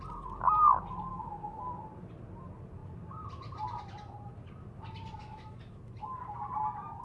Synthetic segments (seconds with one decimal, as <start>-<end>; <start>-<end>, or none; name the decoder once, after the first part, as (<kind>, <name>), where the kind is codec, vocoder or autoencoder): 1.1-1.6 (autoencoder, DAC-VAE); 5.2-5.8